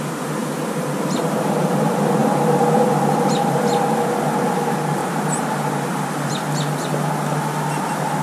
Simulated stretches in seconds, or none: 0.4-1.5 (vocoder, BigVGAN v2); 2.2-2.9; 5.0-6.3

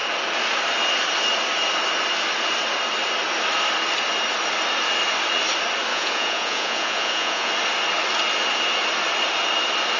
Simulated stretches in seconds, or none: 5.9-7.5 (vocoder, Vocos)

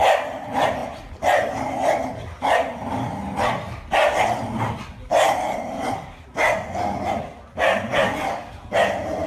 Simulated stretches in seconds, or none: none

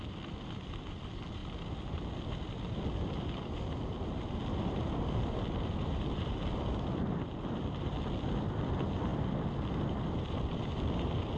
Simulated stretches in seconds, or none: 0.0-1.4 (vocoder, BigVGAN v2); 5.8-9.1; 9.8-11.4

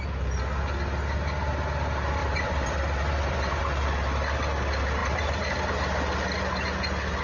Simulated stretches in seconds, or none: 2.2-3.6 (vocoder, BigVGAN v2); 5.0-5.6

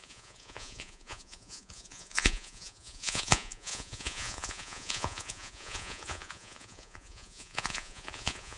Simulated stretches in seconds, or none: 0.0-8.6 (vocoder, Vocos)

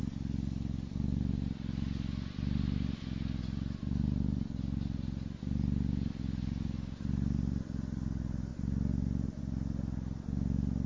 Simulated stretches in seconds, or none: none

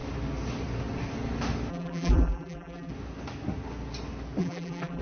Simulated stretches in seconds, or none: 1.7-2.9 (vocoder, BigVGAN v2); 4.4-5.0